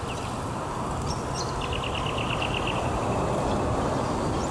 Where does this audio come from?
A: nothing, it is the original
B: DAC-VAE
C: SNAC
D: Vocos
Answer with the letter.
A